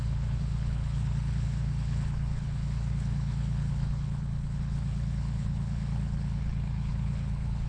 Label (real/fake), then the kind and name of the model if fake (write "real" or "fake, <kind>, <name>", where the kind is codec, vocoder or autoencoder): fake, codec, HILCodec